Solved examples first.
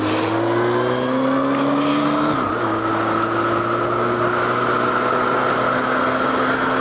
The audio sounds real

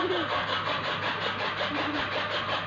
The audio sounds real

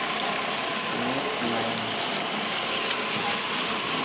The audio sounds real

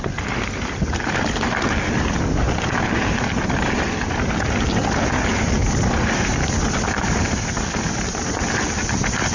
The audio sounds real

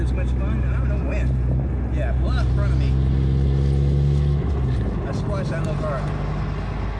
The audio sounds real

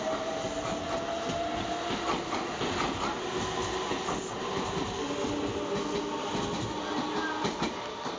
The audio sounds real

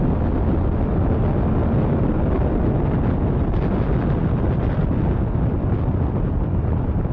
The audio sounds real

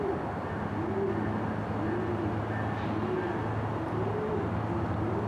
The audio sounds real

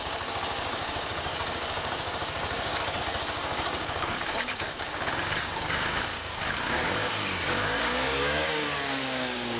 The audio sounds fake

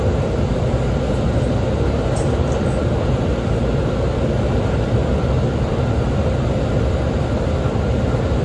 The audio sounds real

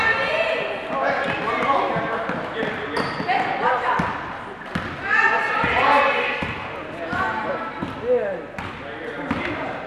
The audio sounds real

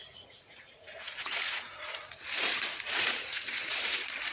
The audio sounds fake